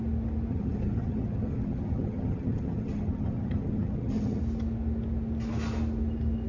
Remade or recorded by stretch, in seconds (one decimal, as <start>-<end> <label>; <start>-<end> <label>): 0.0-0.5 recorded; 0.5-4.4 remade; 4.4-6.5 recorded